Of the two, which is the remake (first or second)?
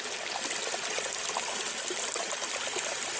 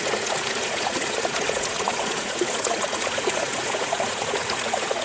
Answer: second